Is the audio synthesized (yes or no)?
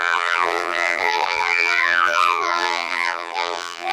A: yes